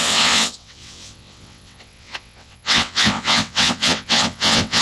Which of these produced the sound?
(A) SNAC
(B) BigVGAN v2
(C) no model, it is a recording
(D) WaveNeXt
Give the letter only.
D